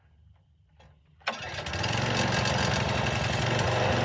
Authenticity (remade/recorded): recorded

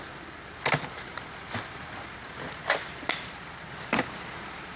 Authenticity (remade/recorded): recorded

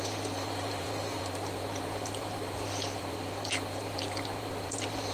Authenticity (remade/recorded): remade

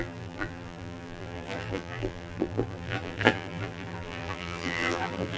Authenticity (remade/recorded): remade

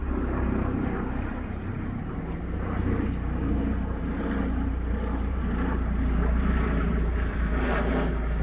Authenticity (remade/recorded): remade